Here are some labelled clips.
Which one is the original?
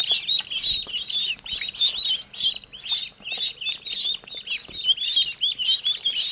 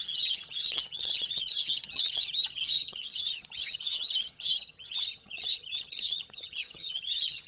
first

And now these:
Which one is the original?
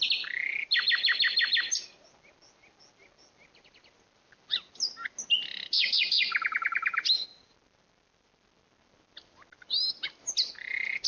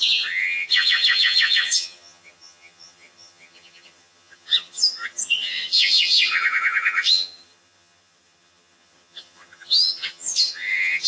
first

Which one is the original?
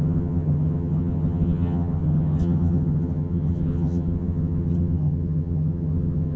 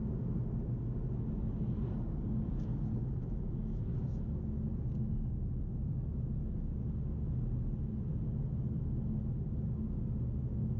second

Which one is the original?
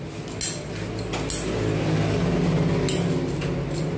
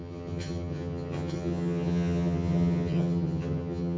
first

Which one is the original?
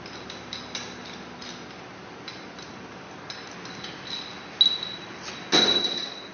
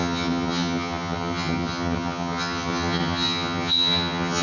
first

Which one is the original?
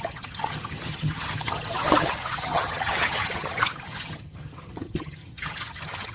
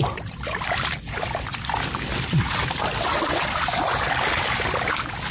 second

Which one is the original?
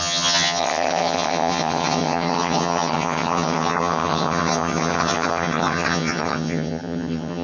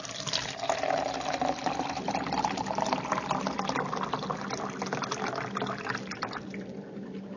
second